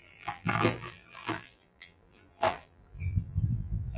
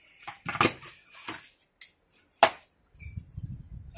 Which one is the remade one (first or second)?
first